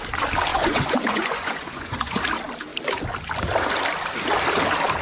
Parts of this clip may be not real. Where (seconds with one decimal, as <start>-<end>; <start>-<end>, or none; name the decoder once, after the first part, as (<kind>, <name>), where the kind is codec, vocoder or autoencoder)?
0.5-2.2 (vocoder, Vocos)